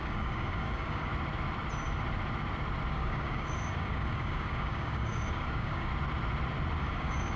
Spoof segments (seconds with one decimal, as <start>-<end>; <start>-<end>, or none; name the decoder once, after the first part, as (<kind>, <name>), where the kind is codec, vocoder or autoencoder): 0.0-1.1 (codec, DAC); 2.9-5.9; 6.8-7.4

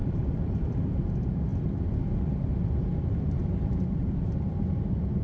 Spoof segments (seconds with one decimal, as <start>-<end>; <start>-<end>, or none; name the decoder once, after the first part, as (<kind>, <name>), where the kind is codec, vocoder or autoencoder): 0.0-1.1 (vocoder, BigVGAN v2); 1.5-4.6

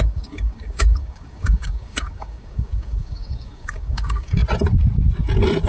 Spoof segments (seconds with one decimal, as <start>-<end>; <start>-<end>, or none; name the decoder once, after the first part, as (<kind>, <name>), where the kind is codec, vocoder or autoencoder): 0.0-4.4 (codec, DAC)

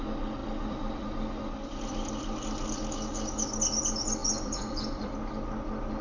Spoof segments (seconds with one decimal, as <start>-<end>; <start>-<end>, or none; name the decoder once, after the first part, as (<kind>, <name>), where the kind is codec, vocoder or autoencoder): 0.4-2.1 (vocoder, BigVGAN v2); 4.2-5.1

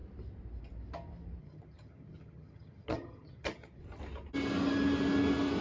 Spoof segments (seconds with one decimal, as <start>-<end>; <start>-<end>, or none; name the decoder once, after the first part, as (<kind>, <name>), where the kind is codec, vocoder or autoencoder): 1.4-3.8 (vocoder, HiFi-GAN)

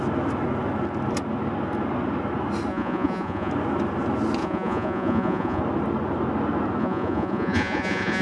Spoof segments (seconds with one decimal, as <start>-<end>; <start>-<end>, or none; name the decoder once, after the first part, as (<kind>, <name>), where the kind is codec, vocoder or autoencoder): 2.7-3.5 (vocoder, Vocos); 4.4-5.6; 6.8-8.2

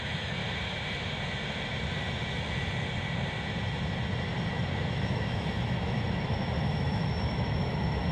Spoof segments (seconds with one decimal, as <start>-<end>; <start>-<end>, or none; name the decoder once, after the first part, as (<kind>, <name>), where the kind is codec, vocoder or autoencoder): 0.0-0.4 (autoencoder, DAC-VAE); 4.5-8.1